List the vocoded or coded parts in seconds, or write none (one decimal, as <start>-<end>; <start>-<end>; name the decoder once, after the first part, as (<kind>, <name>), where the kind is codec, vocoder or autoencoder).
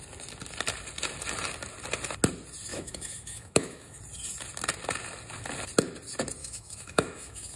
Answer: 2.7-4.0 (autoencoder, DAC-VAE); 6.4-7.6